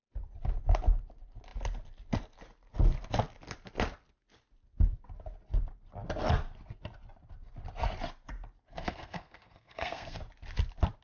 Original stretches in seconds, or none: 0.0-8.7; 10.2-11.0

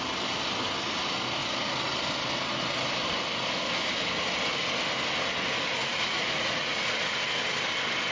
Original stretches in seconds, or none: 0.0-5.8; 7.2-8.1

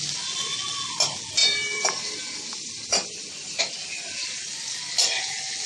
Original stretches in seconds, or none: 0.0-1.4; 3.6-5.7

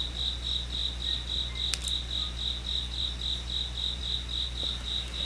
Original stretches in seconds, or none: 0.0-5.3

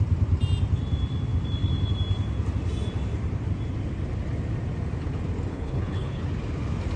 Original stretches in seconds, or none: 0.0-5.5; 6.2-7.0